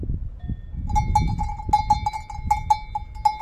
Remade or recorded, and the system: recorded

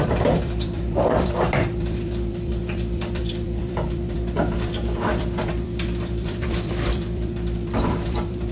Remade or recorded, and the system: remade, vocoder, BigVGAN v2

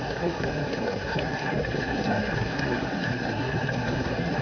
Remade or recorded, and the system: remade, codec, SNAC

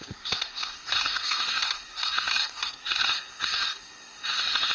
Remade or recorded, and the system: remade, codec, SNAC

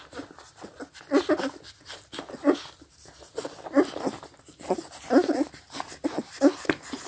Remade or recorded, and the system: recorded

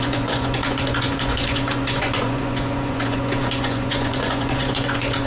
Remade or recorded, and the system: remade, vocoder, Vocos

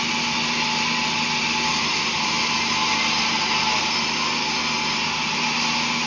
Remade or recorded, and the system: recorded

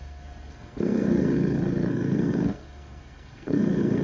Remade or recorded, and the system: remade, codec, SNAC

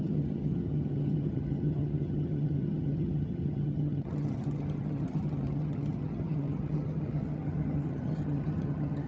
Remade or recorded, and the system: remade, vocoder, HiFi-GAN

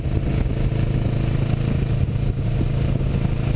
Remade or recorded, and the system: recorded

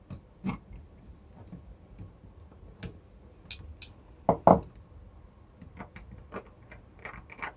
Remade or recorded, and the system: recorded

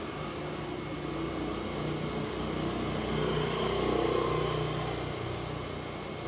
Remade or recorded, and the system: recorded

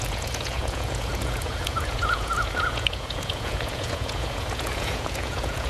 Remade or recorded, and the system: remade, vocoder, Vocos